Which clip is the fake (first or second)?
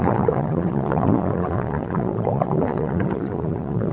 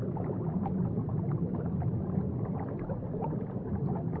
first